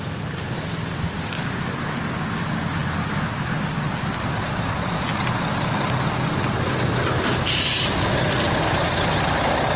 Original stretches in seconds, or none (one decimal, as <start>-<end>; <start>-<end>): 0.0-9.8